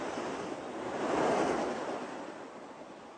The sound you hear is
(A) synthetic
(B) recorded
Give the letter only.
B